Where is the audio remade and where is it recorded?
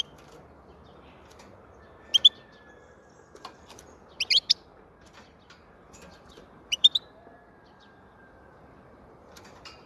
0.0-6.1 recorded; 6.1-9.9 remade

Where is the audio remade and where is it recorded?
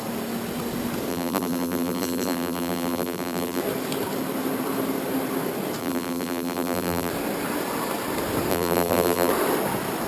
0.0-1.1 recorded; 1.1-3.6 remade; 3.6-5.8 recorded; 5.8-7.1 remade; 7.1-8.5 recorded; 8.5-9.3 remade; 9.3-10.1 recorded